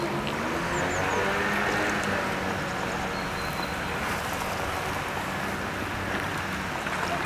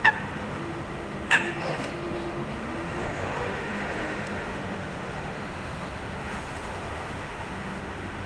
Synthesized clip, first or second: second